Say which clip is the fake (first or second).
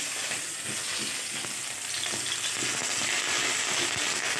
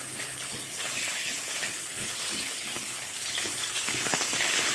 second